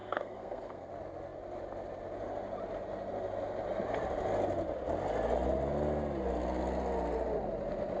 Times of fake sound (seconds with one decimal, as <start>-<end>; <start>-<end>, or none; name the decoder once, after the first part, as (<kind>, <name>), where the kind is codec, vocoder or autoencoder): 0.0-0.9 (codec, SNAC)